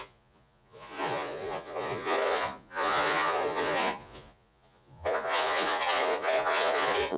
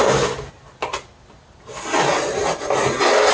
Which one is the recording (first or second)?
second